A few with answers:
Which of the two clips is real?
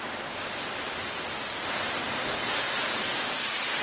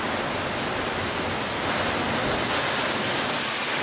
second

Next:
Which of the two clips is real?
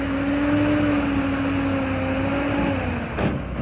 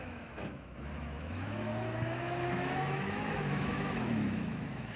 first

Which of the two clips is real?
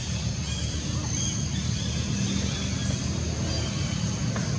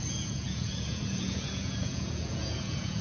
first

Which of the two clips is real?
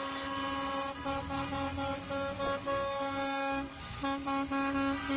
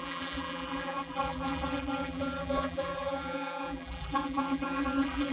first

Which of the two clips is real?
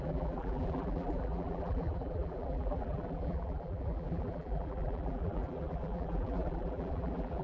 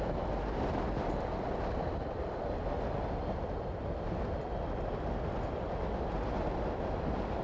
second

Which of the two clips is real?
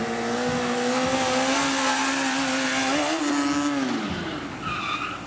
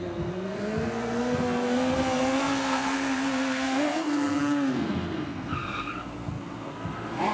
first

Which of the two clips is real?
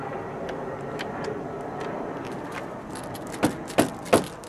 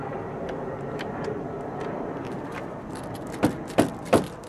first